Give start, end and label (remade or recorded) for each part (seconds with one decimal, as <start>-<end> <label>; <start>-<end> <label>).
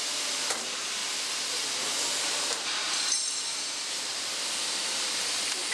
0.0-1.0 remade; 1.0-2.2 recorded; 2.2-4.1 remade; 4.1-4.8 recorded; 4.8-5.7 remade